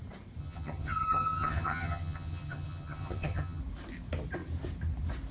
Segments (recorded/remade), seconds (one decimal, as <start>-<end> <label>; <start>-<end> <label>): 0.0-0.4 recorded; 0.4-3.6 remade; 3.6-5.3 recorded